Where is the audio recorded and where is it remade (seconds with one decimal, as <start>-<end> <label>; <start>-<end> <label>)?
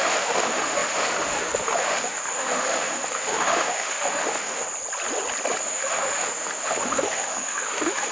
0.0-4.7 remade; 4.7-5.6 recorded; 5.6-8.1 remade